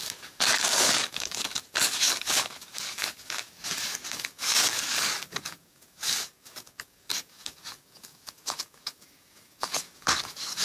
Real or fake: fake